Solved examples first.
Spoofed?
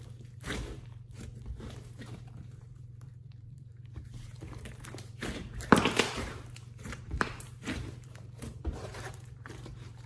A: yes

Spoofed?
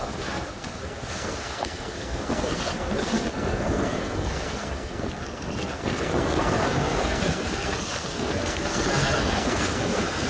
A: yes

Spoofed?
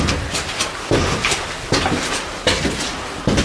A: no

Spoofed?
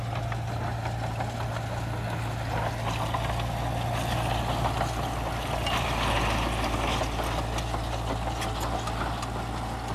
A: no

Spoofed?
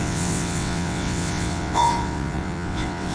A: yes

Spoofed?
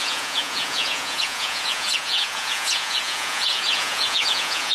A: yes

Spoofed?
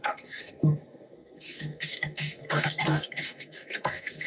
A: yes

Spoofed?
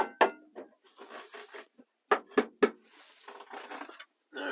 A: no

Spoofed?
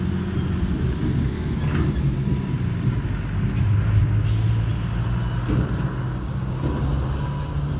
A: no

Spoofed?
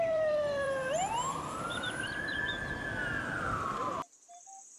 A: yes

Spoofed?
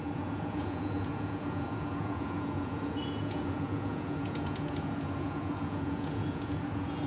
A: yes